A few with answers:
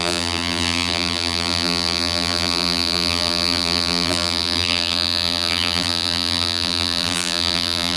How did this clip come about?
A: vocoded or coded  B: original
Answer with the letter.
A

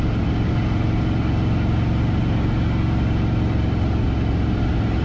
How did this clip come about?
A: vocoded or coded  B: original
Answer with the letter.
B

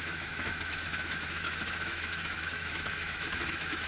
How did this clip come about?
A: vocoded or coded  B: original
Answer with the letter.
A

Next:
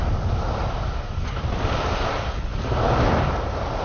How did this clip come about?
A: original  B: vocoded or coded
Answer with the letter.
A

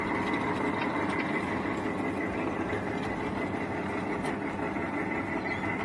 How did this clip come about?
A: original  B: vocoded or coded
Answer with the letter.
A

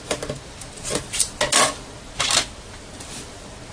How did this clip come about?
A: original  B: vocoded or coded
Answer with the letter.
A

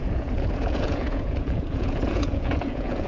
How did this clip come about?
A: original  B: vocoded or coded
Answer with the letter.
B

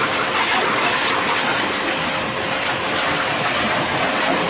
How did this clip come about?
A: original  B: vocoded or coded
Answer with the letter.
A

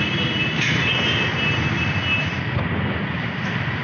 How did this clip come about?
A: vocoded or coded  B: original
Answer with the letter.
B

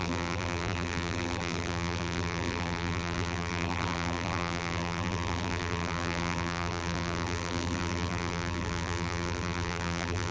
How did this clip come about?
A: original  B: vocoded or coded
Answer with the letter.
B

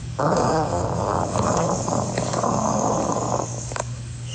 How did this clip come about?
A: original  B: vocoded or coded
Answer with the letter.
B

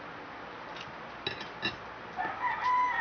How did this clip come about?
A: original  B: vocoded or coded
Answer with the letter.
A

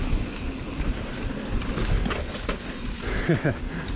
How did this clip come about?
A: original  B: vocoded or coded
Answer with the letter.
A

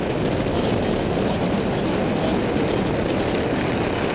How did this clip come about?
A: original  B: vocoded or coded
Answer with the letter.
A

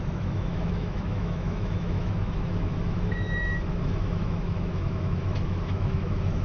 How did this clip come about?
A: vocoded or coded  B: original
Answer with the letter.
A